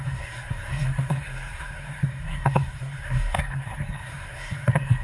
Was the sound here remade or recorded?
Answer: remade